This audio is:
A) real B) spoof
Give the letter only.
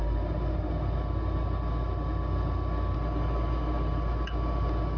A